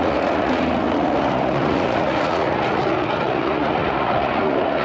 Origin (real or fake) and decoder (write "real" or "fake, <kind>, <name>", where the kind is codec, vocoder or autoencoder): fake, vocoder, Vocos